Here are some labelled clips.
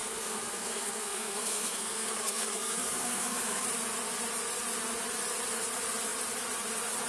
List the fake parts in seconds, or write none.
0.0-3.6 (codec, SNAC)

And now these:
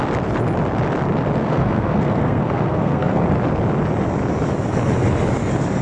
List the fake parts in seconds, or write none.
1.4-3.2 (codec, SNAC)

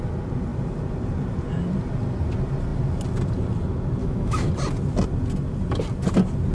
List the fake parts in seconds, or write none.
4.0-4.5 (autoencoder, DAC-VAE)

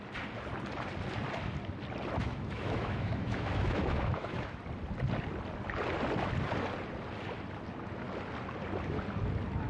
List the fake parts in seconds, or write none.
2.2-4.6 (autoencoder, DAC-VAE)